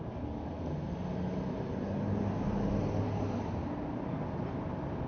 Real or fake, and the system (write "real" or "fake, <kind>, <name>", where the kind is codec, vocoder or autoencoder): real